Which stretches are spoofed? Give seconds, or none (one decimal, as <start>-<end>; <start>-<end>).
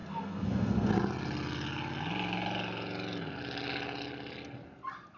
0.0-0.9